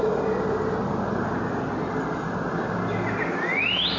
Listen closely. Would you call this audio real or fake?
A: real